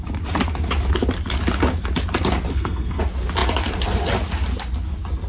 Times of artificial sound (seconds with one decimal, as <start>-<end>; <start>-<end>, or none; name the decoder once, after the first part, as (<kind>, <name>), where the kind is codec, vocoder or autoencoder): 2.5-3.0 (codec, SNAC)